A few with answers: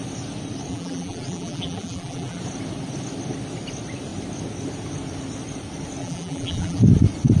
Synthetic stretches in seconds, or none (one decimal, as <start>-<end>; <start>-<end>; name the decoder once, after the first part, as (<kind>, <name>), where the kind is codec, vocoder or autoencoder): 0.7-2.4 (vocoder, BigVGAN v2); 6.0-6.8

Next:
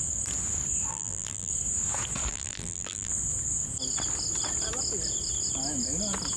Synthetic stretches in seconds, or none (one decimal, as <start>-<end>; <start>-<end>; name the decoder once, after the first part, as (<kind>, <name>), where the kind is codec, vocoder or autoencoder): 0.9-1.5 (vocoder, BigVGAN v2); 2.3-3.1

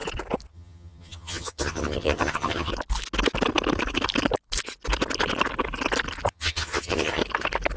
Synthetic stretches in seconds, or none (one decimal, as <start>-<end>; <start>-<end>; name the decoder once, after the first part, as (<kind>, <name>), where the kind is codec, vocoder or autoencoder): 0.5-2.7 (vocoder, HiFi-GAN); 6.3-7.2

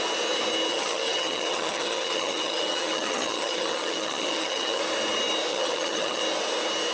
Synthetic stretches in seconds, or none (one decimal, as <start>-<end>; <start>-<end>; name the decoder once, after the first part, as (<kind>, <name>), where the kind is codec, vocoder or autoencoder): 0.7-4.8 (vocoder, HiFi-GAN); 5.5-6.2

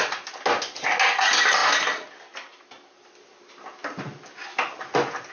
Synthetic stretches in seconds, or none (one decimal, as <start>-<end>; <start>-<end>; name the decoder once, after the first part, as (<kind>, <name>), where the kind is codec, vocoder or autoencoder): none